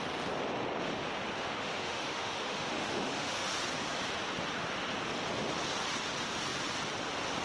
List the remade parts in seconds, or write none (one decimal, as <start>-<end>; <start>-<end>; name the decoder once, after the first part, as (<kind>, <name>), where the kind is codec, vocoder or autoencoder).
1.4-3.5 (autoencoder, DAC-VAE)